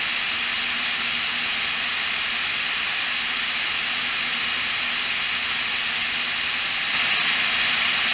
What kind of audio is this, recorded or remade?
recorded